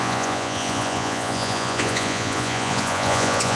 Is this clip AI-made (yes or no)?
yes